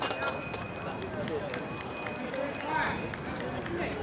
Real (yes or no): yes